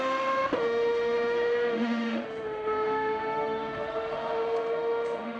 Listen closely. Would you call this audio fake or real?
fake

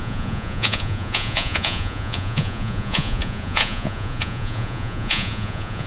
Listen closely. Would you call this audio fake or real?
fake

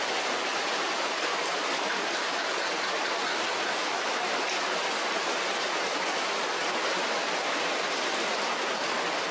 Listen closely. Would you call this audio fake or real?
real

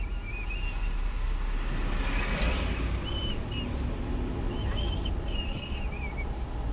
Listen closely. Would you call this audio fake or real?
real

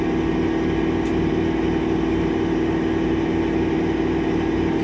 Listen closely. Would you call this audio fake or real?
real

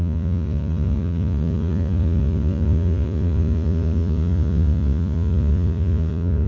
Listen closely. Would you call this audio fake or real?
fake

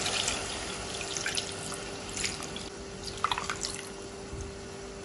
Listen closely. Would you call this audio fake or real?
real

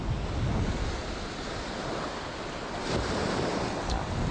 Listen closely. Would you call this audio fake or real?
real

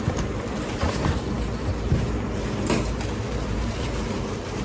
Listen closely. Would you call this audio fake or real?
fake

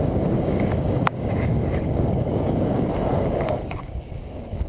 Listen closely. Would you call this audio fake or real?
fake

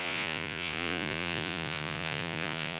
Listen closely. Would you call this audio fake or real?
fake